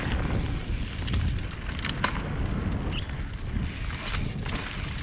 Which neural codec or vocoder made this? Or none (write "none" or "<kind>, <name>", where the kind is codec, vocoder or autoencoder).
none